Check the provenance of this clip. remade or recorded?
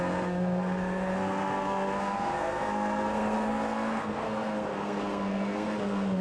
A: remade